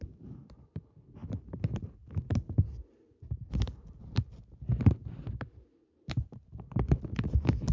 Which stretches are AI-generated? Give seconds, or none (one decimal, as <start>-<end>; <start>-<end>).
none